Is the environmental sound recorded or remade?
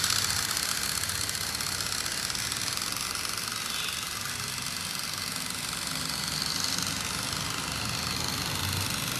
recorded